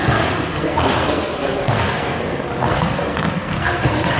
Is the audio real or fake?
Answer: fake